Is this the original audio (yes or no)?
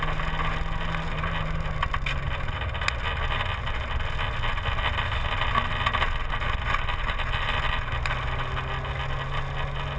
yes